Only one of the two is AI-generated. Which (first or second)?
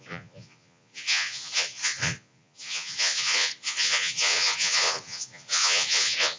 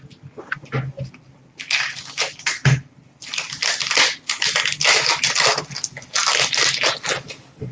first